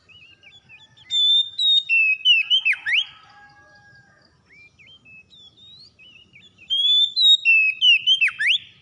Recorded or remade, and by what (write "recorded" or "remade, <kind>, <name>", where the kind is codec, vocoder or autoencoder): recorded